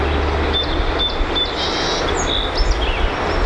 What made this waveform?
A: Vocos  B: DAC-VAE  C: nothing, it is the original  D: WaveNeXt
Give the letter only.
C